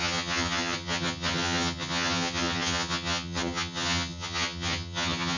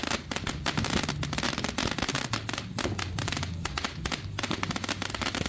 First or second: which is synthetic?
first